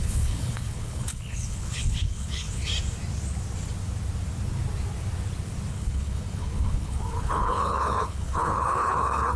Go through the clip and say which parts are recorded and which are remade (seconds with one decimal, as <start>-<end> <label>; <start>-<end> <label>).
0.0-2.7 remade; 2.7-5.7 recorded; 5.7-9.4 remade